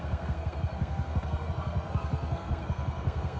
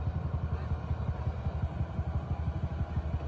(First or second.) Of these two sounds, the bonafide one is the second